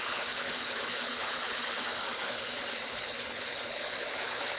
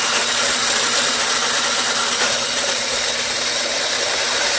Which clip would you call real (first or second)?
second